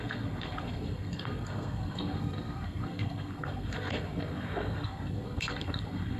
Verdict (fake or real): fake